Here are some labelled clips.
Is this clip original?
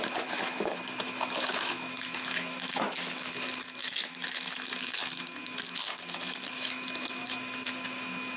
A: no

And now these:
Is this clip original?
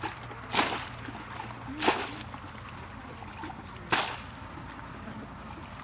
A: yes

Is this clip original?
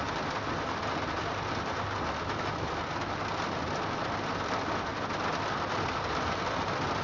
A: yes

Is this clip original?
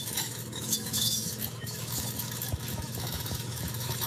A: no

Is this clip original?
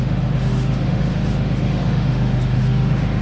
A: no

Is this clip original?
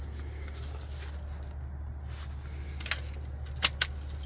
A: yes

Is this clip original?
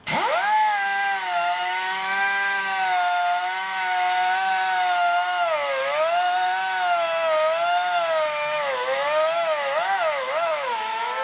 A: no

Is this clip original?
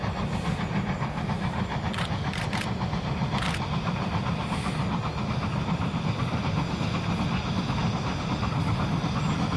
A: yes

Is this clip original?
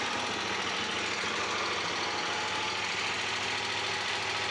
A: yes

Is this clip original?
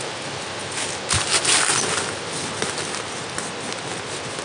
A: yes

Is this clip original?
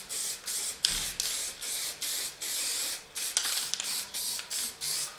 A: yes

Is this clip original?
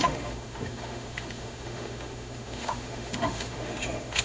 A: no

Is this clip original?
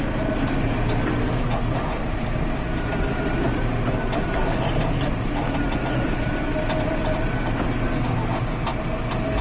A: yes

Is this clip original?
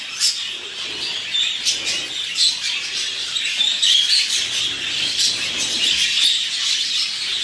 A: yes